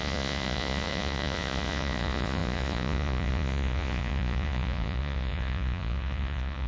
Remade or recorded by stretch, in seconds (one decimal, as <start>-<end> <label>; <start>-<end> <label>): 0.0-6.7 remade